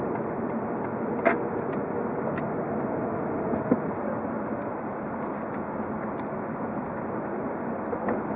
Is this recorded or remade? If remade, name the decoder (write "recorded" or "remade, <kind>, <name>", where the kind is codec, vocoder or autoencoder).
recorded